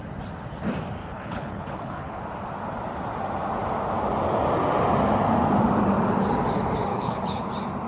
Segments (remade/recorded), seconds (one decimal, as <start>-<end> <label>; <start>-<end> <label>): 0.0-1.0 recorded; 1.0-2.2 remade; 2.2-6.9 recorded; 6.9-7.5 remade; 7.5-7.9 recorded